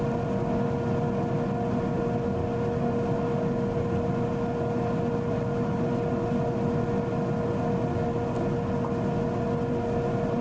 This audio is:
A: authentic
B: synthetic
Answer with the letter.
A